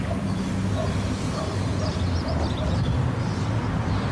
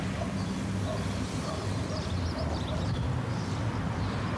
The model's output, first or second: second